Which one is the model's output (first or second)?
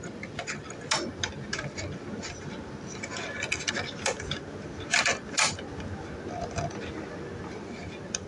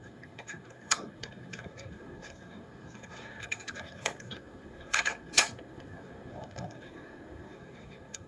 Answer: second